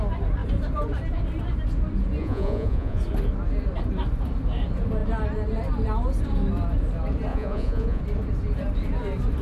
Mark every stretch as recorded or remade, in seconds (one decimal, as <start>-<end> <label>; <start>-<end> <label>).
0.0-2.2 recorded; 2.2-3.0 remade; 3.0-7.3 recorded; 7.3-8.0 remade; 8.0-9.4 recorded